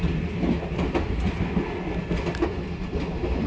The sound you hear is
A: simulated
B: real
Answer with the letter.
B